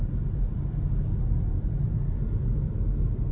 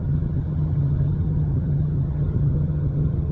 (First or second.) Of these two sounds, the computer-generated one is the second